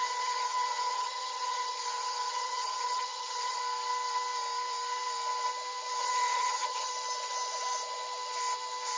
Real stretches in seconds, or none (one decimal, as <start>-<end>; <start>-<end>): 3.6-6.0; 6.9-9.0